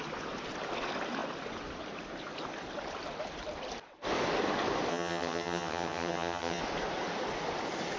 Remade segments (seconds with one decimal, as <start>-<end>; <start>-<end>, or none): 4.9-6.6